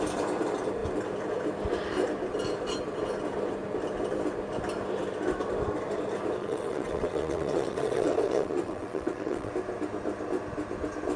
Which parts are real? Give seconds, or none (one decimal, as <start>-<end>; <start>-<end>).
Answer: 0.0-6.4; 9.5-11.2